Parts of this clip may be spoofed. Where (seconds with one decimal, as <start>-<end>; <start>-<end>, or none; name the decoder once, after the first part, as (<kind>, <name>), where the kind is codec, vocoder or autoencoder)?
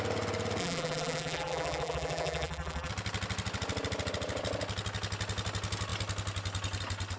0.6-2.9 (vocoder, BigVGAN v2)